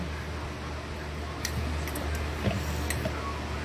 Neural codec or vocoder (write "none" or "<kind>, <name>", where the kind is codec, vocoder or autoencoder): none